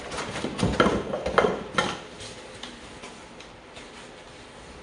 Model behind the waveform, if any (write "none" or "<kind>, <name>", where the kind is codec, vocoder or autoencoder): none